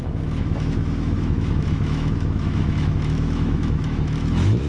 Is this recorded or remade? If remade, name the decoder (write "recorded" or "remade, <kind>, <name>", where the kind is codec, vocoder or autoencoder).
remade, autoencoder, DAC-VAE